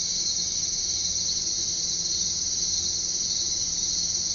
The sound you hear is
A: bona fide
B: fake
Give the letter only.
B